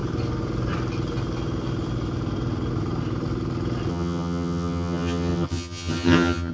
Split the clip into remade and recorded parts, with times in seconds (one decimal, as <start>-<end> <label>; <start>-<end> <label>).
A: 0.0-3.9 recorded; 3.9-6.5 remade